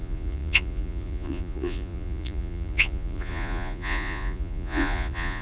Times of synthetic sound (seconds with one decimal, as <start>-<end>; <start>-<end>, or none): 0.0-5.4

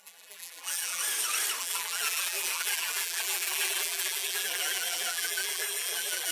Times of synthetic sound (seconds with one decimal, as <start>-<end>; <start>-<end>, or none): 0.0-1.0; 1.6-6.3

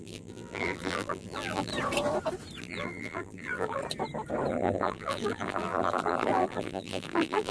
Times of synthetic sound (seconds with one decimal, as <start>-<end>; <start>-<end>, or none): 0.0-1.7; 2.6-3.8; 4.5-7.5